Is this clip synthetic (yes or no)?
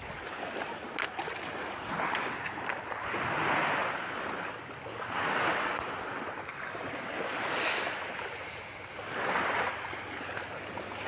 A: no